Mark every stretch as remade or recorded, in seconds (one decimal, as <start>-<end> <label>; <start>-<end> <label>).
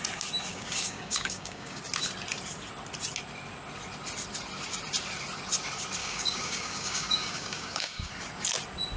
0.0-0.5 recorded; 0.5-1.8 remade; 1.8-6.0 recorded; 6.0-8.1 remade; 8.1-9.0 recorded